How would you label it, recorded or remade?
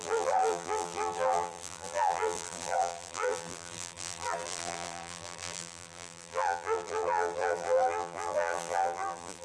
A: remade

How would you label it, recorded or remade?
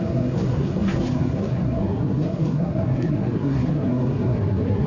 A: remade